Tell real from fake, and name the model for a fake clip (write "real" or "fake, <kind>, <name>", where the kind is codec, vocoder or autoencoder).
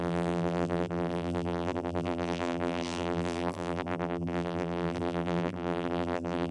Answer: fake, vocoder, BigVGAN v2